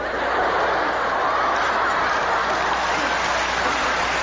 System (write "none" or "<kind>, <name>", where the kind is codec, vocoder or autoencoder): none